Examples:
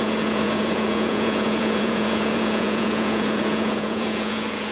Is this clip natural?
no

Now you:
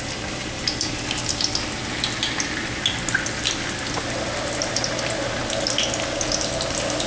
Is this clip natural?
yes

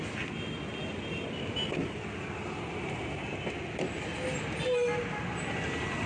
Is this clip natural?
yes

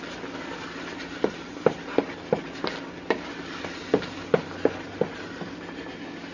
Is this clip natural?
yes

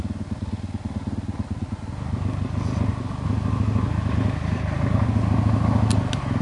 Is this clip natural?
yes